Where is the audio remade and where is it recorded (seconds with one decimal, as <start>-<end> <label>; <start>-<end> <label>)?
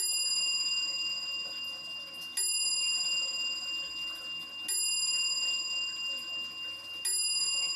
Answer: 0.0-7.8 recorded